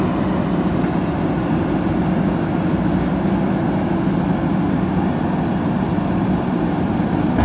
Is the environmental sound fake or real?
real